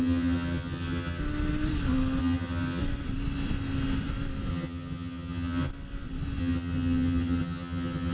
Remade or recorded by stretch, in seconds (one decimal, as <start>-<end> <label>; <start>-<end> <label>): 0.0-1.2 remade; 1.2-2.2 recorded; 2.2-2.8 remade; 2.8-4.5 recorded; 4.5-5.7 remade; 5.7-6.4 recorded; 6.4-8.1 remade